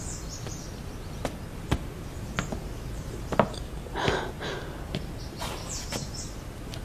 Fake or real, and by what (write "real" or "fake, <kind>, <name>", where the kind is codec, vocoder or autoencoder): real